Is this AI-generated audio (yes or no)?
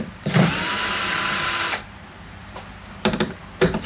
yes